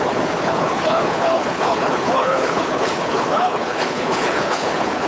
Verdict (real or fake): fake